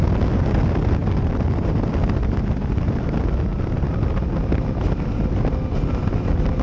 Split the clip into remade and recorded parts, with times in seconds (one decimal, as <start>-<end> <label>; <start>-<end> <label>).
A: 0.0-1.0 recorded; 1.0-3.0 remade; 3.0-3.5 recorded; 3.5-4.0 remade; 4.0-6.6 recorded